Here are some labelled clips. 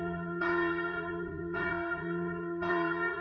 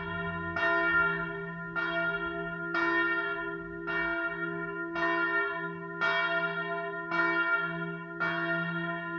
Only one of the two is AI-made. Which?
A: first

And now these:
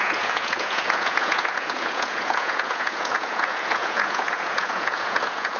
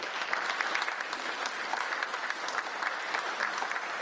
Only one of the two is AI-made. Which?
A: first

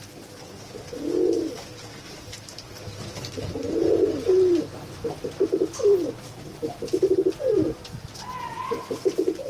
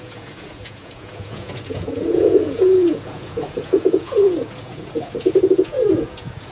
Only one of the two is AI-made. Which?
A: second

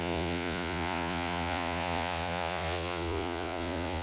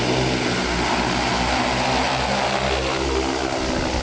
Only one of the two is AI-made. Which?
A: first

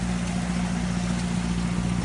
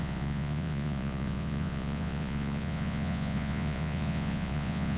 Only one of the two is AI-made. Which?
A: second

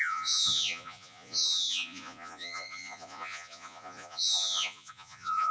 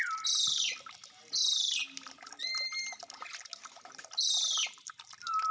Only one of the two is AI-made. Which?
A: first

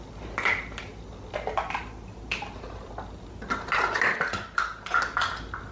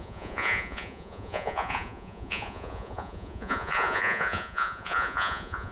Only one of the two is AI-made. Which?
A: second